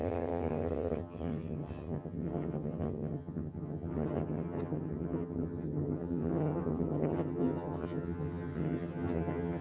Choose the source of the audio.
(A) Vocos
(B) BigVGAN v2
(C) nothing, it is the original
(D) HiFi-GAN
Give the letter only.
D